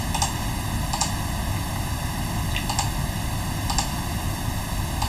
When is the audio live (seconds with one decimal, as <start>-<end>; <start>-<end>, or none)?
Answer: 0.0-5.1

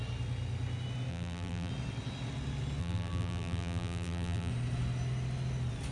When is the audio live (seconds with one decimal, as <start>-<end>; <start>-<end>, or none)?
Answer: 0.0-1.1; 1.7-2.8; 4.5-5.9